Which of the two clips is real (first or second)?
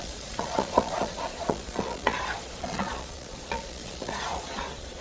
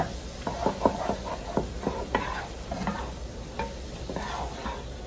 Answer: second